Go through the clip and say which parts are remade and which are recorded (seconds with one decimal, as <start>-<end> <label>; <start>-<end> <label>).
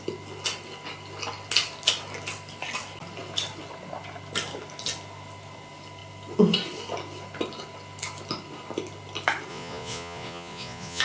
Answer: 0.0-9.5 recorded; 9.5-11.0 remade